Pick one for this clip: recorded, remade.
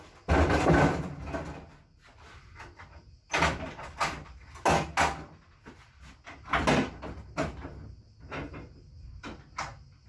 recorded